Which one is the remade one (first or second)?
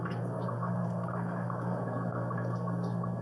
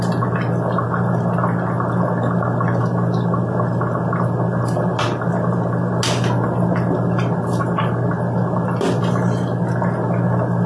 first